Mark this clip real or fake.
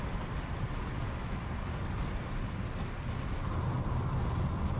real